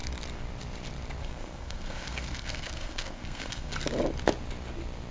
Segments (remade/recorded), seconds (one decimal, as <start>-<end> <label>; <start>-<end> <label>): 0.0-1.2 recorded; 1.2-3.7 remade; 3.7-5.1 recorded

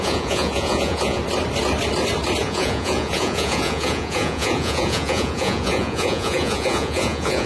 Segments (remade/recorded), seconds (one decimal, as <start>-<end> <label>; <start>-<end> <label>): 0.0-1.2 remade; 1.2-2.4 recorded; 2.4-7.5 remade